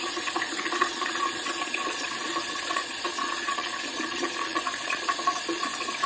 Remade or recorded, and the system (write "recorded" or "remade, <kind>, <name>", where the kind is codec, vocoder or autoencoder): remade, vocoder, Vocos